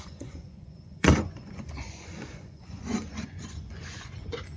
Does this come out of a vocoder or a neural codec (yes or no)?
yes